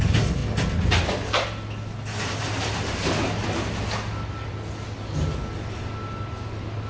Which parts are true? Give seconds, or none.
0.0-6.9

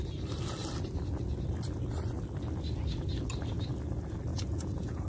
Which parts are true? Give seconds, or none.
0.0-4.3

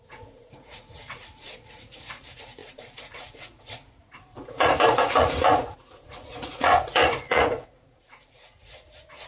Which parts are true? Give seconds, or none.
none

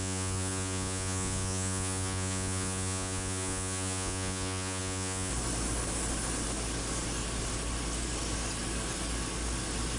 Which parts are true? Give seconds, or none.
5.3-10.0

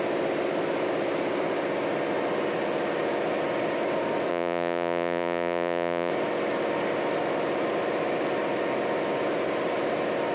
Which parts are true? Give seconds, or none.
0.0-4.3; 6.1-10.3